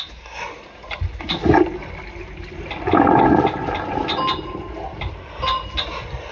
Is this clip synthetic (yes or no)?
no